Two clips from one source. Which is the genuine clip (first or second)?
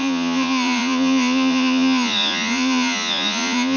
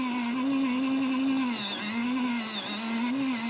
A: second